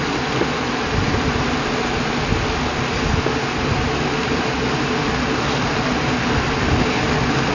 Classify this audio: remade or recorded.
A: recorded